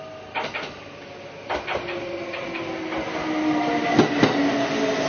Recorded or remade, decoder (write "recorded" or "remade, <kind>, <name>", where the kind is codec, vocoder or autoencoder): recorded